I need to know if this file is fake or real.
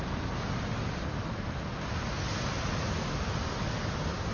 real